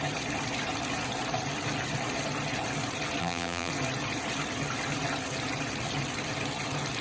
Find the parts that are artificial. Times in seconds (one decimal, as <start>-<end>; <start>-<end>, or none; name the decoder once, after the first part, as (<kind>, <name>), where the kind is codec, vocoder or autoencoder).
3.2-3.7 (vocoder, BigVGAN v2)